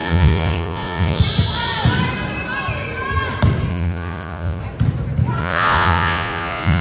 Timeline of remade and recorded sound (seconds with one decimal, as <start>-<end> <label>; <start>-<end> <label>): 0.0-1.2 remade; 1.2-3.7 recorded; 3.7-4.6 remade; 4.6-5.4 recorded; 5.4-6.8 remade